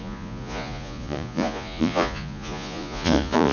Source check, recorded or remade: remade